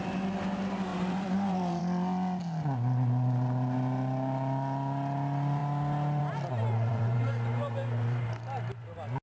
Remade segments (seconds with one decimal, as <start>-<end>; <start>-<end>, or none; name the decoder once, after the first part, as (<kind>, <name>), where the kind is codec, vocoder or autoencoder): 0.9-1.8 (vocoder, BigVGAN v2); 6.9-9.2